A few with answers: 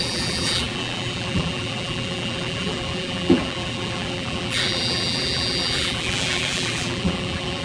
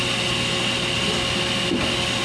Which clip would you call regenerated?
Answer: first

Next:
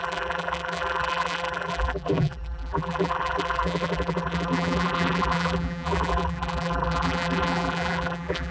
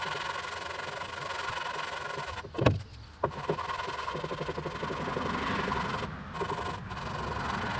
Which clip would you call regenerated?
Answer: first